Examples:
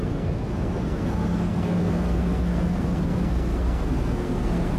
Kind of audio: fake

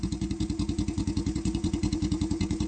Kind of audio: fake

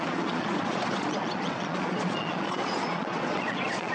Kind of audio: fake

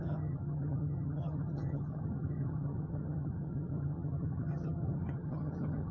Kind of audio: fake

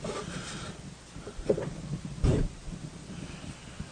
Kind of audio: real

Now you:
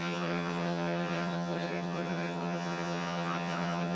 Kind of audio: fake